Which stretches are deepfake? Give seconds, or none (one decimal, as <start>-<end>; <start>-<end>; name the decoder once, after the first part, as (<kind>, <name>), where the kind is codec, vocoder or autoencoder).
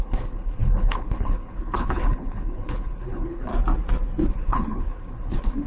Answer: 0.0-3.5 (codec, HILCodec); 4.3-5.7